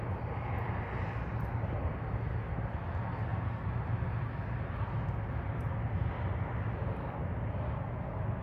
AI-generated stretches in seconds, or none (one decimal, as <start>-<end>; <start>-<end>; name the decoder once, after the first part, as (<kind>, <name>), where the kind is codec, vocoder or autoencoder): none